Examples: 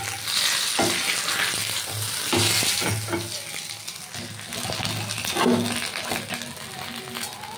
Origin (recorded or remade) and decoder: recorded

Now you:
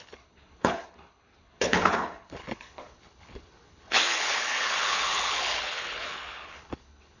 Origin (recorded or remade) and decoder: remade, codec, HILCodec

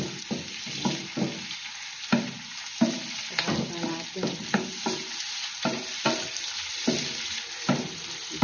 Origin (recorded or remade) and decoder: recorded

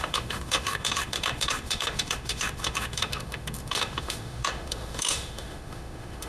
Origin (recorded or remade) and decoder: remade, autoencoder, DAC-VAE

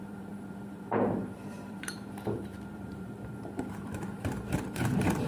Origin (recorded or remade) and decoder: remade, vocoder, BigVGAN v2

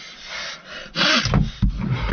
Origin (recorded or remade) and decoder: recorded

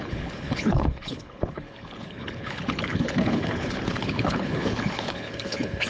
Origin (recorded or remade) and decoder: remade, codec, HILCodec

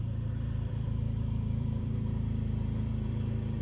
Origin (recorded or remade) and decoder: remade, vocoder, BigVGAN v2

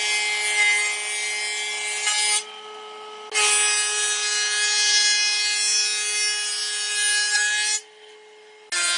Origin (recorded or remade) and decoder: recorded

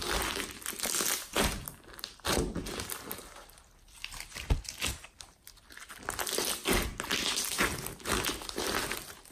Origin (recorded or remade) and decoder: recorded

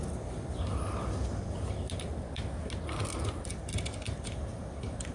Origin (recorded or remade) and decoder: recorded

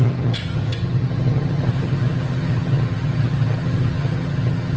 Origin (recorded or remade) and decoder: remade, vocoder, HiFi-GAN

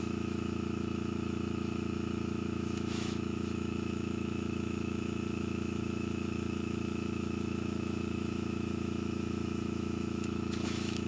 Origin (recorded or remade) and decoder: remade, autoencoder, DAC-VAE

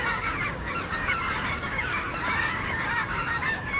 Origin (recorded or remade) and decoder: remade, codec, DAC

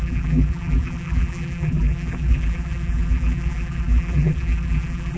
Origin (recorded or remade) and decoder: remade, vocoder, BigVGAN v2